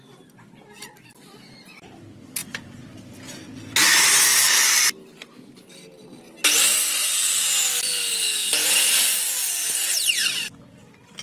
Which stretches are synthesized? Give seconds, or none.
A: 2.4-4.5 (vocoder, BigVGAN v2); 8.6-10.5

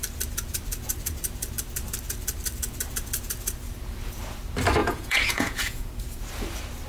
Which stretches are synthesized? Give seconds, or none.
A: 4.8-5.9 (vocoder, Vocos)

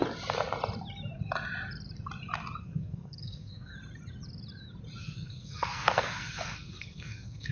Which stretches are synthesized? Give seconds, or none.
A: 2.6-3.7 (codec, SNAC); 5.0-7.5

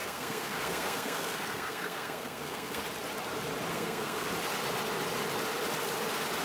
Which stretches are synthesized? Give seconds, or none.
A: 0.0-2.8 (codec, SNAC); 3.7-4.3

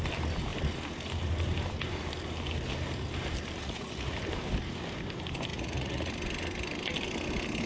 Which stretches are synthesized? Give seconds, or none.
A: 3.6-4.2 (vocoder, Vocos); 5.5-6.1

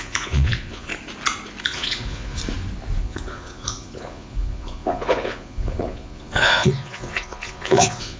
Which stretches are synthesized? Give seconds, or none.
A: 0.0-0.9 (vocoder, Vocos); 1.6-2.4; 3.0-8.2

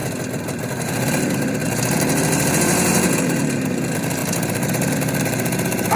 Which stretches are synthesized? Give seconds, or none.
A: 0.7-6.0 (vocoder, BigVGAN v2)